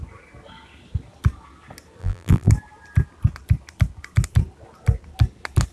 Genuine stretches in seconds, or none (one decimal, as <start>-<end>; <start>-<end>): 0.0-2.0; 2.5-5.7